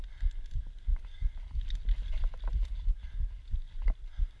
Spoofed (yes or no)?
no